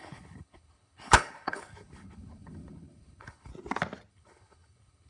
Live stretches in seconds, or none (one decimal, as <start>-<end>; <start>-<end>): 3.5-4.1